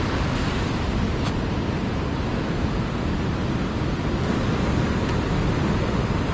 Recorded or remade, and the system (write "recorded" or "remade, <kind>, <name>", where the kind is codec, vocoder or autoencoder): recorded